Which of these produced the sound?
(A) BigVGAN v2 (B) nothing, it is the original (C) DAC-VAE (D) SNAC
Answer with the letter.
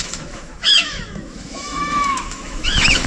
C